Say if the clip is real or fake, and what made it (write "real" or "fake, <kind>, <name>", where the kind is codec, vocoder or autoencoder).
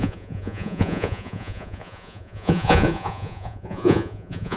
fake, vocoder, Vocos